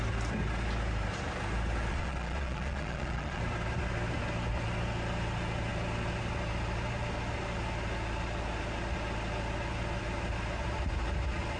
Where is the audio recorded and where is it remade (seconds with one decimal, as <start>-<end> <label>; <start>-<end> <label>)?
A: 0.0-1.9 recorded; 1.9-3.4 remade; 3.4-11.6 recorded